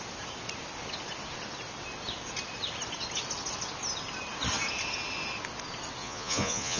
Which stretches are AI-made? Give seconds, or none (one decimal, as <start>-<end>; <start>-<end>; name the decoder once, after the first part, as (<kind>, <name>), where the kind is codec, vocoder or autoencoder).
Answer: 6.0-6.8 (vocoder, Vocos)